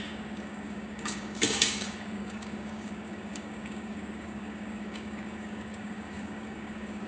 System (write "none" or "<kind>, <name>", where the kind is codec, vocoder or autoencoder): codec, DAC